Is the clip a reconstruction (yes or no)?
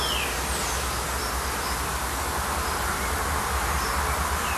no